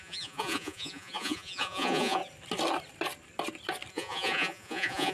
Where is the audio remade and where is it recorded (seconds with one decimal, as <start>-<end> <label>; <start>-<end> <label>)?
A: 0.0-2.2 remade; 2.2-3.9 recorded; 3.9-5.1 remade